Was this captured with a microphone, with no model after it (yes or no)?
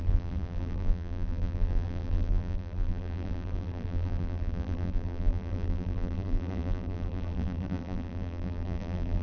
no